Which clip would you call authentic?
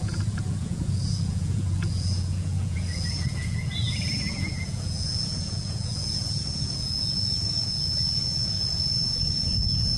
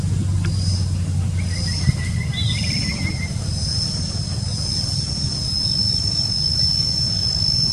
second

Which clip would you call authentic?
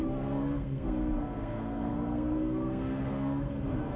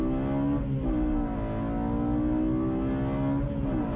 second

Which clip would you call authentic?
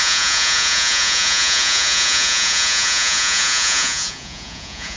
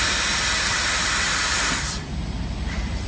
second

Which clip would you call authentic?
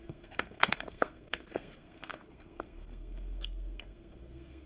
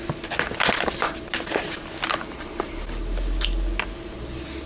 second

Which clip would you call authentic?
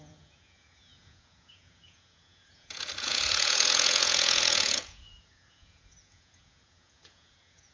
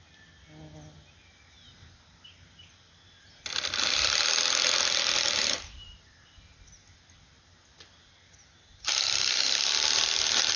second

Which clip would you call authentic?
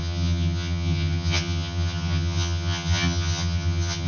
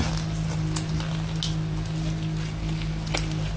second